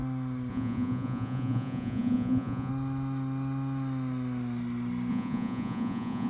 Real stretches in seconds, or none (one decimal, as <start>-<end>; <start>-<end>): 0.0-0.5; 2.7-5.1